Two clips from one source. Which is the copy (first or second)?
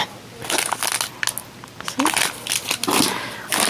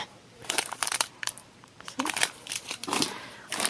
second